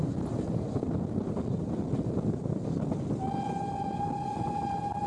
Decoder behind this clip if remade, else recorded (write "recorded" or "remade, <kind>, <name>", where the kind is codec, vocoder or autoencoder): recorded